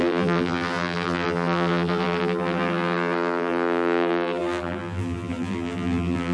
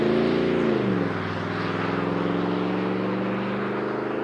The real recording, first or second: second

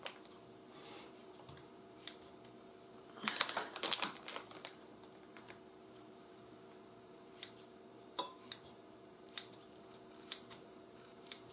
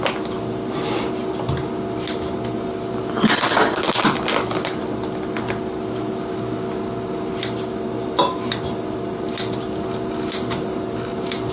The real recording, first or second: second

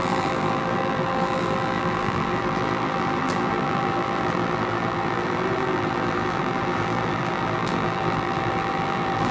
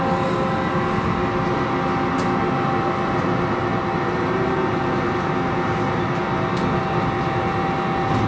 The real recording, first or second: second